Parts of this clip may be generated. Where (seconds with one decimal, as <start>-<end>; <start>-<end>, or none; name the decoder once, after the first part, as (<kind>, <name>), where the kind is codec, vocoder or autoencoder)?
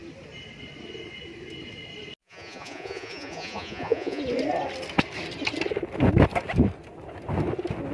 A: 2.2-4.2 (vocoder, Vocos)